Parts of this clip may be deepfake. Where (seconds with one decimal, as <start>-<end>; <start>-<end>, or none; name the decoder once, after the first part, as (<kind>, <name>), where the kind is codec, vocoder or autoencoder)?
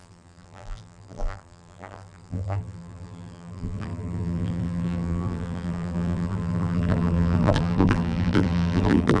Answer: 0.0-9.2 (vocoder, BigVGAN v2)